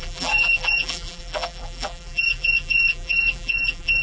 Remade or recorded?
remade